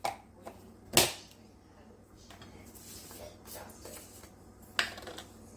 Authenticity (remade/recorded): recorded